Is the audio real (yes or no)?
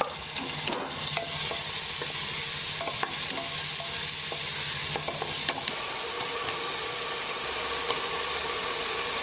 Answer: yes